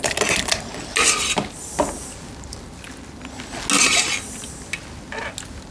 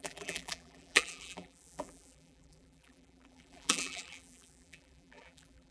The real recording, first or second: first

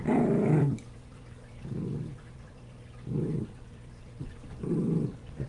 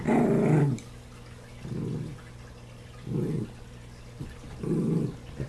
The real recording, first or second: second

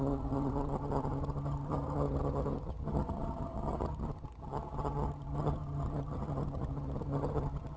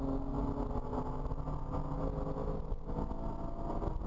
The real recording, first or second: second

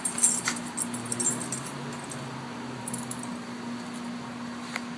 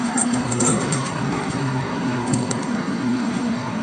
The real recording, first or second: first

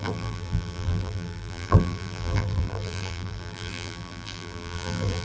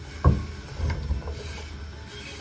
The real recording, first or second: second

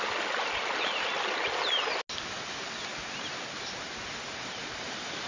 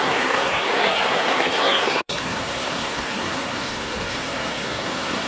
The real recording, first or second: first